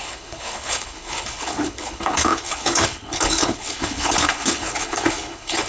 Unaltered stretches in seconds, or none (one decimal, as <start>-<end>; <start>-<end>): none